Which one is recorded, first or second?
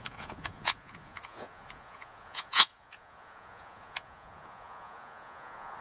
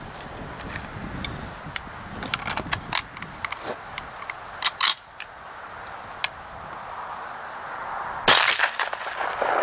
second